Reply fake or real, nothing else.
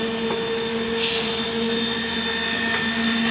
real